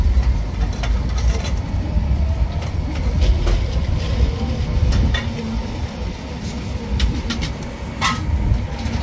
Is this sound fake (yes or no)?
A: no